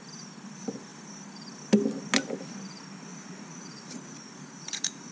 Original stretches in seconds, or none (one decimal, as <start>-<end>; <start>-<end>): 0.0-3.1